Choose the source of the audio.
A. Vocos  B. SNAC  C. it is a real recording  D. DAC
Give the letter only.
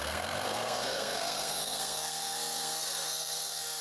B